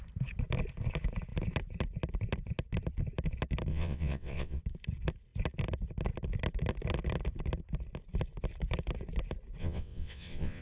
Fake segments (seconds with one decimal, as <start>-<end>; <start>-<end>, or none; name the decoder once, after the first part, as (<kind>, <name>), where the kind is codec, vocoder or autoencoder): 3.7-4.6 (vocoder, WaveNeXt); 9.6-10.6